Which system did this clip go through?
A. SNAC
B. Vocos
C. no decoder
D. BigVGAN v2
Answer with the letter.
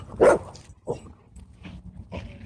C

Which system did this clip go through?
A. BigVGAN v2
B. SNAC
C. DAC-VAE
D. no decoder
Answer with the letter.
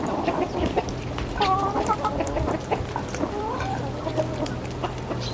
A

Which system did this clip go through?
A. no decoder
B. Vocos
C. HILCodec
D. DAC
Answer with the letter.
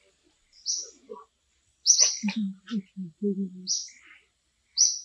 A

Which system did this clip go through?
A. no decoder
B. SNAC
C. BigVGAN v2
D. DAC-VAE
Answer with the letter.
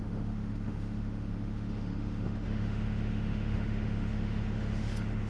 D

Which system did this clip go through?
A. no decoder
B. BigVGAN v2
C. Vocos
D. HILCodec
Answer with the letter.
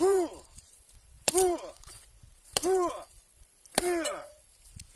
C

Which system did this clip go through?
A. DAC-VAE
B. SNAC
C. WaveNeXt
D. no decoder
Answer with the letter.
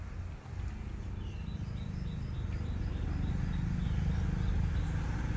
D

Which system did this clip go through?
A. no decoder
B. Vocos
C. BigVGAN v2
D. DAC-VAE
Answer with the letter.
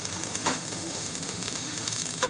D